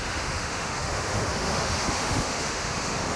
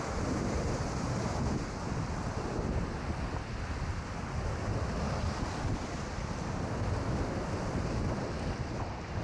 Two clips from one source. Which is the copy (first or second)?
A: first